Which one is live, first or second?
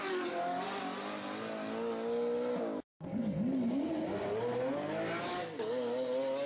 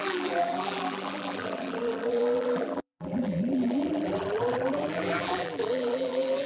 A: first